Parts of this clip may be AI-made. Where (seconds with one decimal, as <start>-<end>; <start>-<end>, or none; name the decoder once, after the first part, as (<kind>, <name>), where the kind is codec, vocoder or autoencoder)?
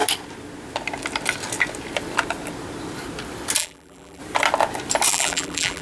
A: 3.6-4.2 (vocoder, BigVGAN v2); 5.1-5.8